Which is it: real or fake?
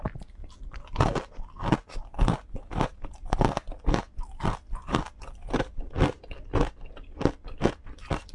real